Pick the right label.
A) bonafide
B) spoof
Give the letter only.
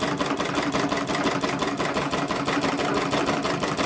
A